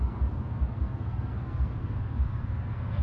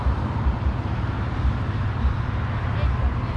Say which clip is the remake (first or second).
first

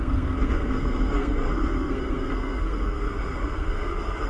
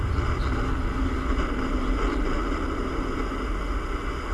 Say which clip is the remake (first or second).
first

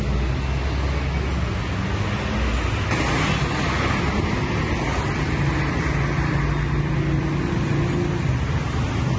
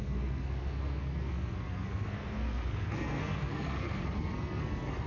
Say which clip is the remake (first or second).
second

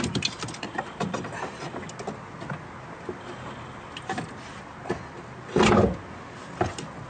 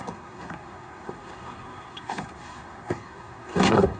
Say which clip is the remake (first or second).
second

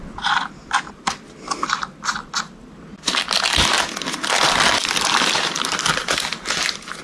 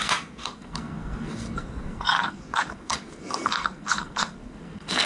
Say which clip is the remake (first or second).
second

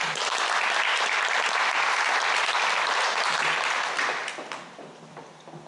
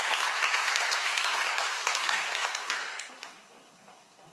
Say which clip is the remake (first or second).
second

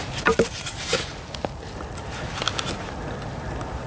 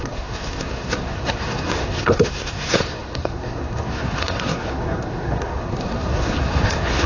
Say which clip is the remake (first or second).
second